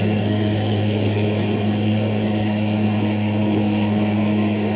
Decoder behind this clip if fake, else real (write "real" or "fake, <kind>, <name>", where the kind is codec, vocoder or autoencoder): fake, codec, SNAC